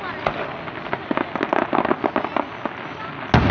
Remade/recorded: recorded